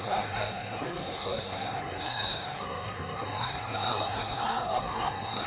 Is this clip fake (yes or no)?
yes